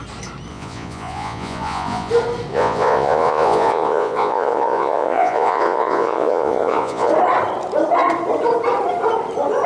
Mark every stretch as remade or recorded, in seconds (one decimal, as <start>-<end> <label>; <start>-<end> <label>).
0.0-0.5 recorded; 0.5-2.1 remade; 2.1-2.5 recorded; 2.5-7.1 remade; 7.1-9.7 recorded